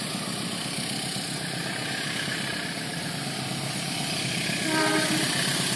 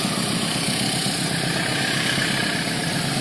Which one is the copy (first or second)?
first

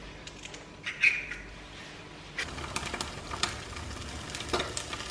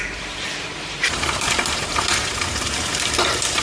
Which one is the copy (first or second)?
second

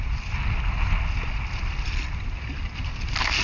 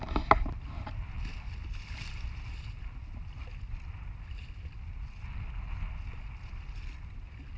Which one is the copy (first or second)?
first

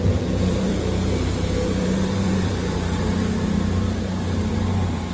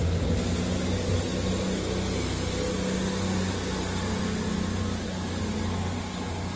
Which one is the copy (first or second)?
first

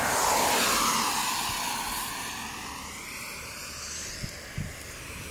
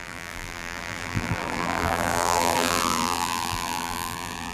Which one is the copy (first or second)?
second